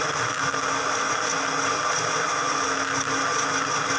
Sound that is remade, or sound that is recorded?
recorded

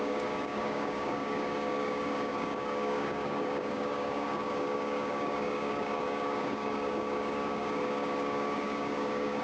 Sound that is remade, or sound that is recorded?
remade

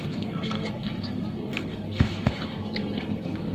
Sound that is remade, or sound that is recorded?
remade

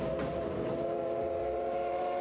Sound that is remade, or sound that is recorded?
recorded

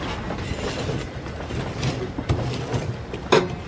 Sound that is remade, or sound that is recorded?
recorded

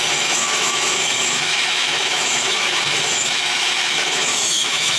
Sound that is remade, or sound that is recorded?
remade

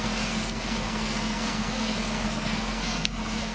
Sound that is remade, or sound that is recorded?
remade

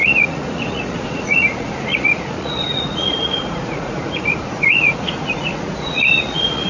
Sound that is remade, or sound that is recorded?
remade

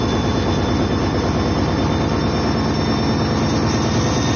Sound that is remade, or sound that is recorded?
recorded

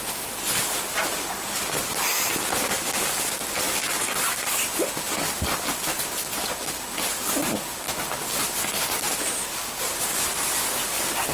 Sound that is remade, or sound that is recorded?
recorded